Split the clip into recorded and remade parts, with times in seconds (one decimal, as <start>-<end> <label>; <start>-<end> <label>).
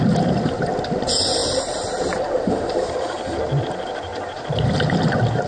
0.0-5.5 recorded